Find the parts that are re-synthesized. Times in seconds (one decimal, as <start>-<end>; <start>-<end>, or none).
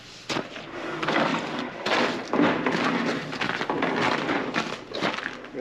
none